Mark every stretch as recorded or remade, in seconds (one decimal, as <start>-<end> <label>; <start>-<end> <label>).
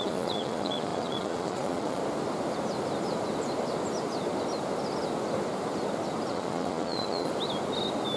0.0-2.0 remade; 2.0-6.3 recorded; 6.3-7.3 remade; 7.3-8.2 recorded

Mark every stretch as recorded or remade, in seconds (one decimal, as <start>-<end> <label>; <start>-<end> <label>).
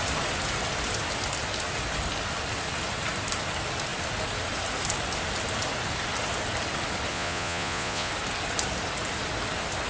0.0-7.1 recorded; 7.1-8.1 remade; 8.1-9.9 recorded